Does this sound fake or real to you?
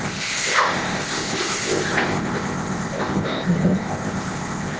fake